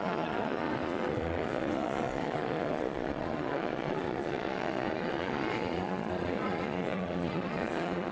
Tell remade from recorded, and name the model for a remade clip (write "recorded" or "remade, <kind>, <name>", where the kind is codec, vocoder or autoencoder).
remade, vocoder, Vocos